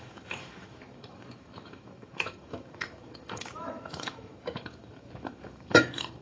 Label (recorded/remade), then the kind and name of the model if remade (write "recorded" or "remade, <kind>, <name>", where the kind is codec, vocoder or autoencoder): remade, autoencoder, DAC-VAE